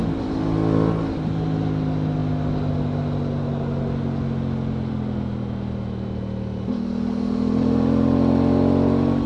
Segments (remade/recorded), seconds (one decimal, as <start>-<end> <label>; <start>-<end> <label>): 0.0-9.3 recorded